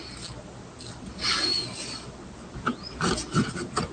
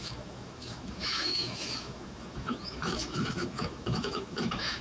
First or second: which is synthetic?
second